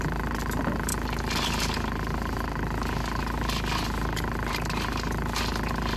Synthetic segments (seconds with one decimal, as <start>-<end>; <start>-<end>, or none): none

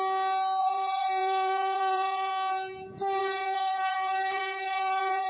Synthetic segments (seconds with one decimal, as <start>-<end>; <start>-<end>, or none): 0.6-2.3; 3.2-5.3

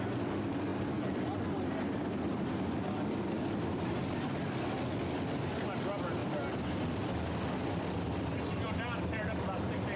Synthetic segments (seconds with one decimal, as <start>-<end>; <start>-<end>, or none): none

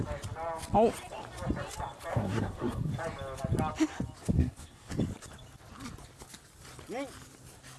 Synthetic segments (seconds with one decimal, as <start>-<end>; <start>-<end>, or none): 2.1-2.9; 4.4-4.9

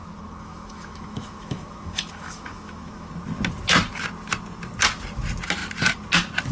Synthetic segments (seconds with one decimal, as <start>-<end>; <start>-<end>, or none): 0.0-3.1